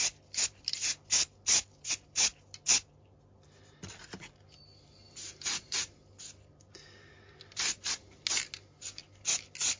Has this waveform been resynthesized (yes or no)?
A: no